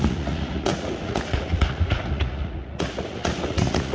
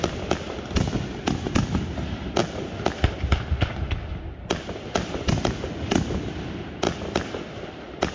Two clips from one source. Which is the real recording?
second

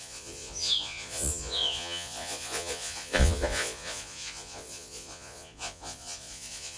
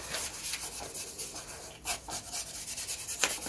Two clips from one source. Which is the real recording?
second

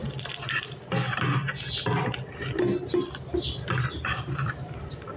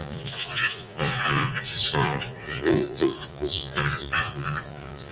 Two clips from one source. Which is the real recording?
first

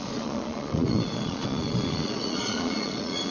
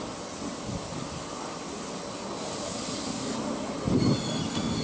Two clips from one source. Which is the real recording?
second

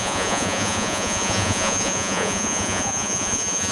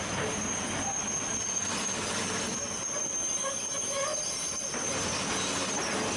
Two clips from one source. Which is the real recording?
second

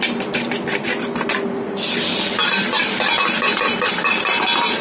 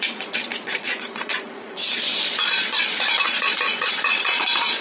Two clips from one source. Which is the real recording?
first